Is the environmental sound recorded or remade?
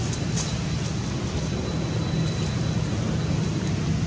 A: recorded